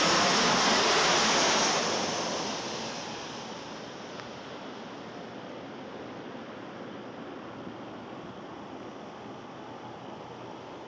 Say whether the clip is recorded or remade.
recorded